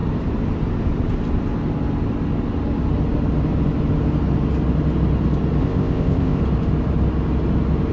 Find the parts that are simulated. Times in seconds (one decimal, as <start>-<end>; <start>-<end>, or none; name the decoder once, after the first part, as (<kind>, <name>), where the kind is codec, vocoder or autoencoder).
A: 5.6-6.4 (codec, ZipCodec)